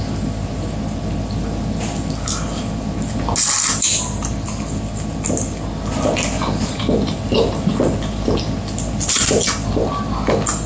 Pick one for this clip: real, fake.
real